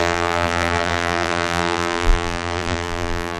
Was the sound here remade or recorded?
remade